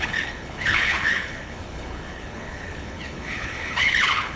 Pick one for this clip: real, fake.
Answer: fake